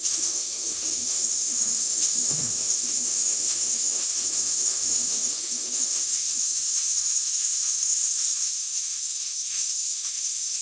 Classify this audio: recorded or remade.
remade